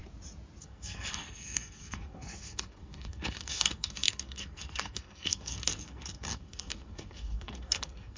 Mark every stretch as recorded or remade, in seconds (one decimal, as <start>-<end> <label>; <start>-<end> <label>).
0.0-0.6 recorded; 0.6-8.2 remade